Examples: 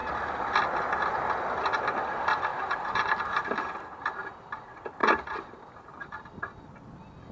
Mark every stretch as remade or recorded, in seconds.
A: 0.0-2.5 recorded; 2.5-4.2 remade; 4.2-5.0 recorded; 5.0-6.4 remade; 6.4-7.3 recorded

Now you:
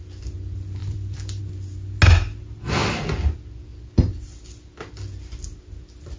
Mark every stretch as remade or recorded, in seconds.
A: 0.0-0.8 recorded; 0.8-1.4 remade; 1.4-6.2 recorded